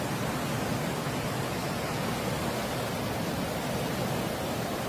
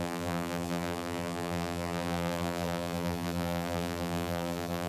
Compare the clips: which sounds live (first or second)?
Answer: first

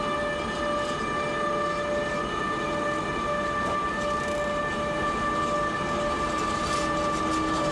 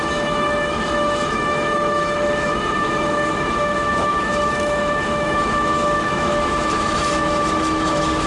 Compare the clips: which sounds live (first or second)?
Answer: first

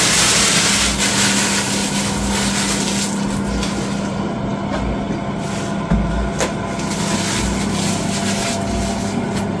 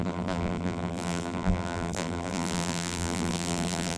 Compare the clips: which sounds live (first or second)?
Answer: first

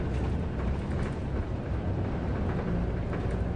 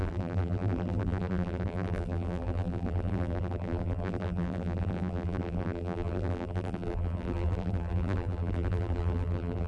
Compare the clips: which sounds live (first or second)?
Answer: first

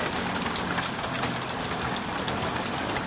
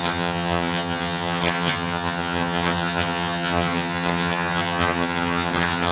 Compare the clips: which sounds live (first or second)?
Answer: first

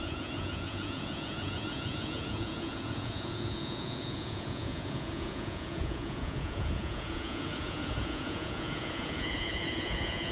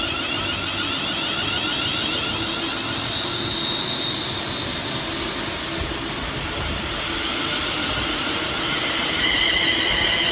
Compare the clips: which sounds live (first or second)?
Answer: second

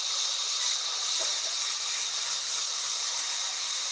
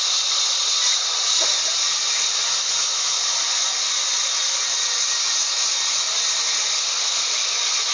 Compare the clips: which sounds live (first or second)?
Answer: second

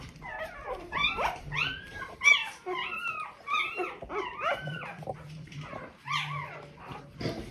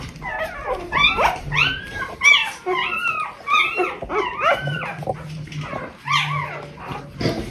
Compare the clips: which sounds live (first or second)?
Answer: second